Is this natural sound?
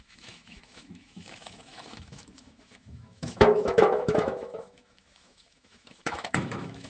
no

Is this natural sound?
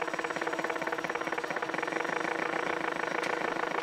yes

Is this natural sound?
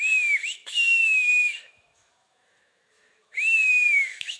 no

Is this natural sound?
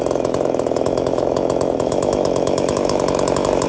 no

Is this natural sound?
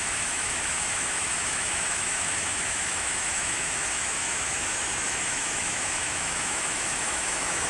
no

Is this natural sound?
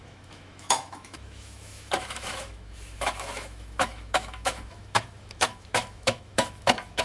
no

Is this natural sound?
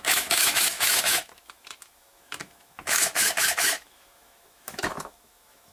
no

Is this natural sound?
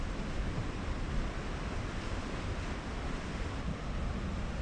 yes